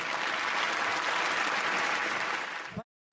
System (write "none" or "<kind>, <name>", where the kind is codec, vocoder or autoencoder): none